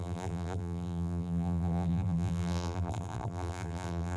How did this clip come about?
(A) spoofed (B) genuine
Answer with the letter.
A